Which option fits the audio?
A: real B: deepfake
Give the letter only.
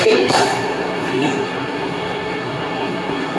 B